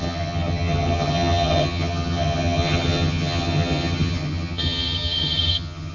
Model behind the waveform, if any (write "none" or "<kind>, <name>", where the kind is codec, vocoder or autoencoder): vocoder, HiFi-GAN